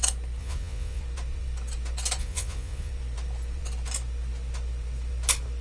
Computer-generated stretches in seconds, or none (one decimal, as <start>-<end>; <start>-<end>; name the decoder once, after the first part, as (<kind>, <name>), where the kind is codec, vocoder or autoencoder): 0.4-1.0 (vocoder, Vocos); 2.2-2.9